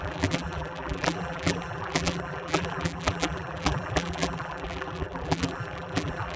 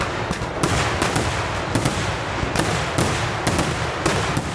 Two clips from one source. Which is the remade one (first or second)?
first